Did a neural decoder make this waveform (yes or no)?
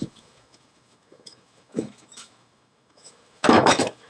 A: yes